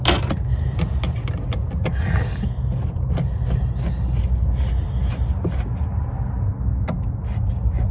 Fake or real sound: real